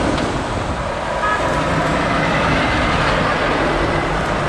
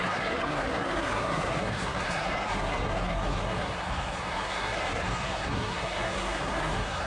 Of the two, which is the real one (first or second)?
first